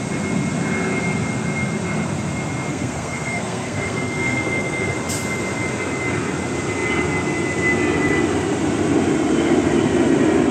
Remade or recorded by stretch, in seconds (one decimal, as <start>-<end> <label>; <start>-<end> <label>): 0.0-2.7 recorded; 2.7-4.9 remade; 4.9-10.5 recorded